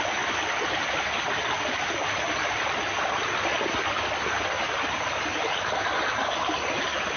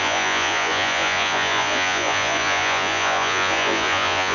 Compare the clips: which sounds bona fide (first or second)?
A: first